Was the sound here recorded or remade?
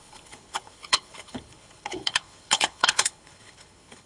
remade